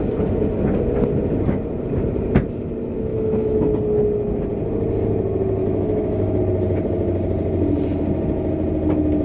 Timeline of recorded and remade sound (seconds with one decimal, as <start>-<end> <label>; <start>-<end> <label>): 0.0-3.1 recorded; 3.1-3.7 remade; 3.7-5.6 recorded; 5.6-6.4 remade; 6.4-9.2 recorded